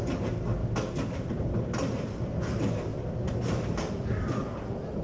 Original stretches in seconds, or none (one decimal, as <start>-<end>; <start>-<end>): 0.0-0.6; 2.1-5.0

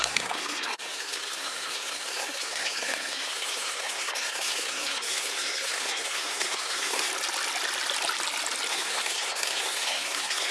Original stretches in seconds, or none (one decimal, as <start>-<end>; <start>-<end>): 7.1-8.7

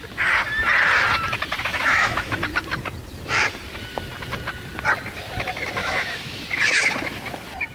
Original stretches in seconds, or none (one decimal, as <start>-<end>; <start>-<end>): 0.0-1.7; 2.4-5.8; 6.4-7.7

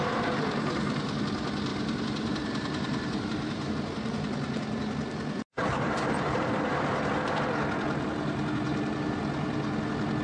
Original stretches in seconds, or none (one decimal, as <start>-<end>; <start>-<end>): 0.0-1.7; 3.7-5.5; 7.1-10.2

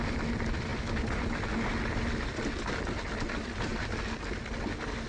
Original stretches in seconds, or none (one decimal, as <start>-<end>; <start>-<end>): 0.0-5.1

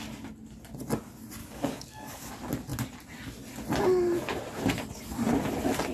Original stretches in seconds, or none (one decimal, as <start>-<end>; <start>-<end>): 0.0-1.4; 2.3-5.9

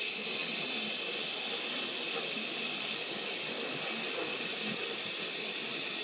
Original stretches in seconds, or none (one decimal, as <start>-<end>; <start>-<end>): 0.0-6.0

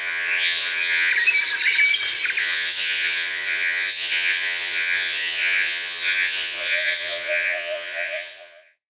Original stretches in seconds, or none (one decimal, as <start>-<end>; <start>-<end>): 1.1-2.4